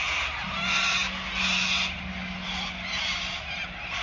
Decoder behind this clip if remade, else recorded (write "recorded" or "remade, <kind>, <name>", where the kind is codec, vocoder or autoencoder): recorded